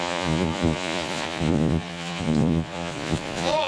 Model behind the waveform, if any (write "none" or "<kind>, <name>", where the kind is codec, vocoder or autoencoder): vocoder, Vocos